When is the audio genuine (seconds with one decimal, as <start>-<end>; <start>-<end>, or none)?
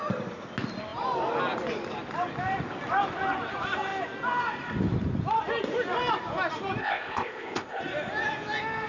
0.0-6.8; 7.8-8.9